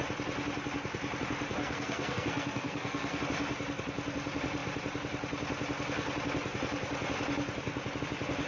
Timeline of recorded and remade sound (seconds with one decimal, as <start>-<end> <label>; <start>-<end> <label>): 0.0-1.6 recorded; 1.6-3.2 remade; 3.2-8.5 recorded